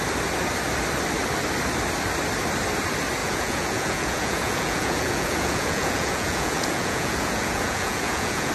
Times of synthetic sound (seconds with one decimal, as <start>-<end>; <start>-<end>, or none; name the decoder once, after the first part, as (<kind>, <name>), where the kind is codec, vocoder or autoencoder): 3.2-8.5 (vocoder, Vocos)